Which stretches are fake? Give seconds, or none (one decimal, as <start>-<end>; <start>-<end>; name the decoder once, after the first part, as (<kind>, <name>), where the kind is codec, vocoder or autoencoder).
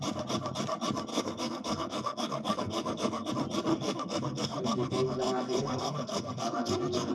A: 1.1-3.3 (codec, SNAC); 3.7-7.1